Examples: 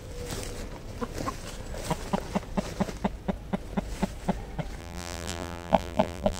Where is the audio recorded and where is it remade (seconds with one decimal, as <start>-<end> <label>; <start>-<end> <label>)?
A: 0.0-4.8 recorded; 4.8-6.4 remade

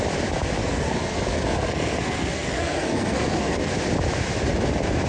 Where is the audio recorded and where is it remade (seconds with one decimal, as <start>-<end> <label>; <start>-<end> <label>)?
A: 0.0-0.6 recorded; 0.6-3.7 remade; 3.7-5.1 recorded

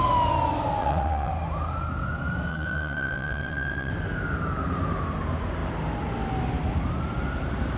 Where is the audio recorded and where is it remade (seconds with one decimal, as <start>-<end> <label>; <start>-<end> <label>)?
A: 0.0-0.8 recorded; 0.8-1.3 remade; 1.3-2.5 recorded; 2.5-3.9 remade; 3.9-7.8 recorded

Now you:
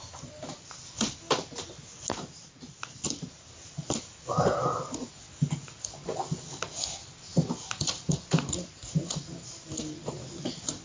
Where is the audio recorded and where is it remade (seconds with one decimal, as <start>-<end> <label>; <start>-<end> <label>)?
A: 0.0-2.4 recorded; 2.4-3.1 remade; 3.1-10.0 recorded; 10.0-10.8 remade